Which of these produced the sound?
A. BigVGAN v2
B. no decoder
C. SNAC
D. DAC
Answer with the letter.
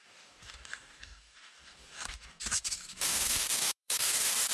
D